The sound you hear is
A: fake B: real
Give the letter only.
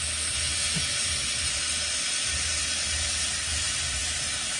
B